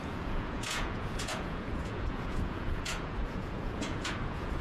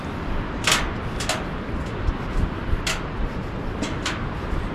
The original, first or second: second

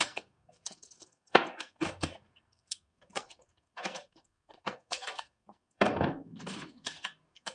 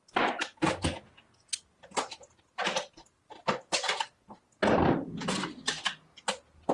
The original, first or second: second